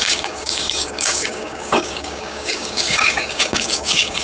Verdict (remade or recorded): remade